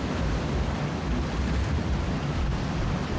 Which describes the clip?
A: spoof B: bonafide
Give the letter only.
B